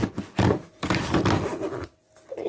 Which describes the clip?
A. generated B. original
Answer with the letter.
B